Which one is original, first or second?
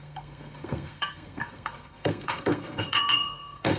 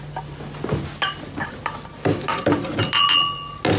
second